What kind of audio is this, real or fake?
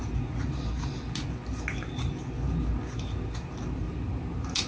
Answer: real